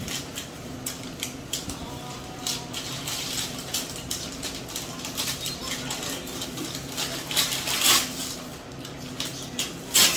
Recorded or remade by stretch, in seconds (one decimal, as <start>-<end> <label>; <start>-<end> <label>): 0.0-5.6 remade; 5.6-6.2 recorded; 6.2-8.5 remade; 8.5-10.2 recorded